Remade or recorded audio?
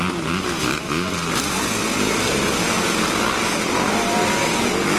recorded